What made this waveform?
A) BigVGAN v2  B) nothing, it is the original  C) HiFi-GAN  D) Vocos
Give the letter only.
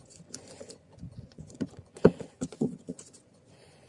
D